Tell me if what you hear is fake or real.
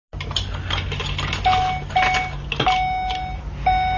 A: real